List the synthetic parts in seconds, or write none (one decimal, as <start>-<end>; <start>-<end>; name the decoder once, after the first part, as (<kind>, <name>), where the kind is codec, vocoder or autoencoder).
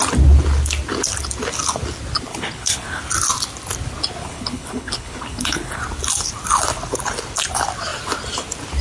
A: 2.3-3.0 (codec, HILCodec); 4.2-5.8